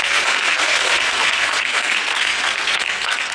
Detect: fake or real fake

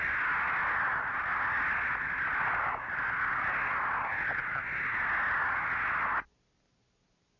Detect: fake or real real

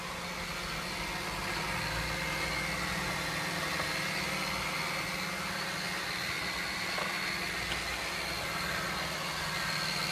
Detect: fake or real real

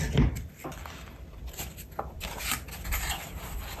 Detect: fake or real real